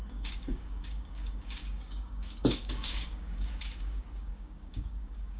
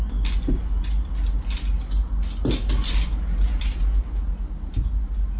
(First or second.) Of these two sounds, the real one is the second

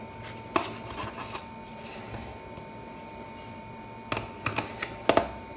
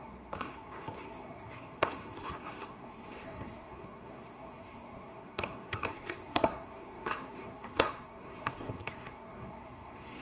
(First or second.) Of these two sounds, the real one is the first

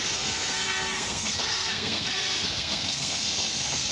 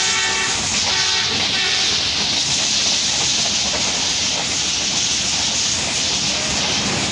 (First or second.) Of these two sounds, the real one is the second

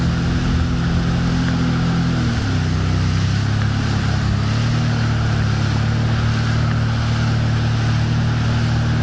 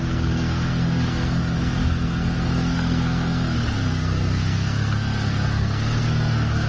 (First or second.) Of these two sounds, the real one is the first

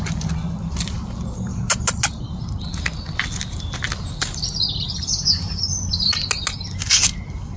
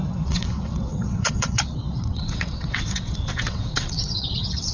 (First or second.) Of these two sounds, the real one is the first